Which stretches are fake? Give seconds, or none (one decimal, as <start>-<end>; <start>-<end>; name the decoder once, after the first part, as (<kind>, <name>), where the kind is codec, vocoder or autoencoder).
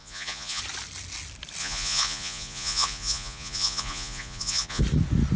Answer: 0.0-0.6 (vocoder, Vocos); 1.6-4.8